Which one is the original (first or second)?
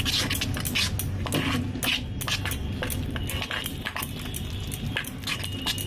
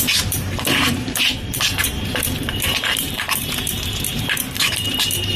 first